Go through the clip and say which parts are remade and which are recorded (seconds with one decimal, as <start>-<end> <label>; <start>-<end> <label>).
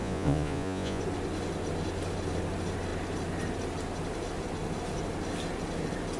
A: 0.0-1.0 remade; 1.0-6.2 recorded